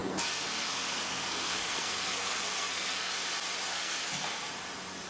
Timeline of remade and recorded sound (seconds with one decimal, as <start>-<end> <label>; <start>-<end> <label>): 0.0-3.1 remade; 3.1-3.7 recorded; 3.7-4.5 remade; 4.5-5.1 recorded